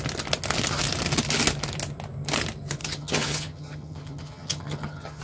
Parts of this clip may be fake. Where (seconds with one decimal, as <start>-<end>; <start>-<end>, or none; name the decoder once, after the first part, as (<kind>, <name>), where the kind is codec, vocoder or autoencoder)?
2.8-5.2 (vocoder, HiFi-GAN)

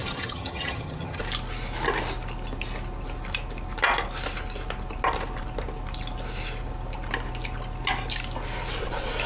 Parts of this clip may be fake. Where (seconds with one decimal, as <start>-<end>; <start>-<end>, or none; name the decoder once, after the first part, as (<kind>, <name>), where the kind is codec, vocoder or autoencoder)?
0.0-1.2 (vocoder, HiFi-GAN)